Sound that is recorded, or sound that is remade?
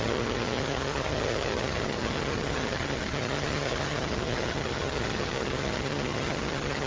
remade